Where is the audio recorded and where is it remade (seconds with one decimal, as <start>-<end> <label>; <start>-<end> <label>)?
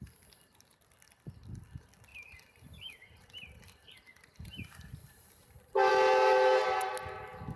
0.0-2.1 recorded; 2.1-5.9 remade; 5.9-7.6 recorded